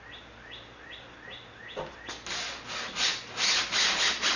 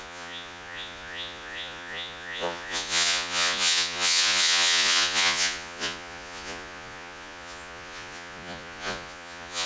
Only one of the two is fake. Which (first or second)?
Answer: second